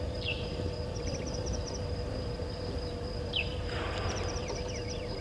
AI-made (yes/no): yes